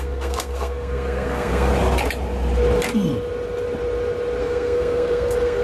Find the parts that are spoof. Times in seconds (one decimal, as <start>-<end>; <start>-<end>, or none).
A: 0.0-1.7; 4.4-5.6